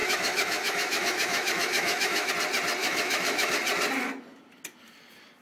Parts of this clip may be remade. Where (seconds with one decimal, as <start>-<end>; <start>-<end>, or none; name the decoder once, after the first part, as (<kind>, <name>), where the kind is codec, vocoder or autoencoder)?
0.0-2.3 (autoencoder, DAC-VAE); 2.8-3.5